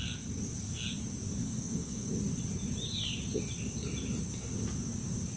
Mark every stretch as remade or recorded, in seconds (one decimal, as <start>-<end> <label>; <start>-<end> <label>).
0.0-1.4 recorded; 1.4-2.1 remade; 2.1-5.4 recorded